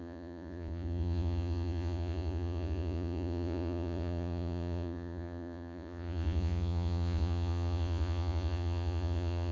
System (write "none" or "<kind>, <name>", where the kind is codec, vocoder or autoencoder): vocoder, Vocos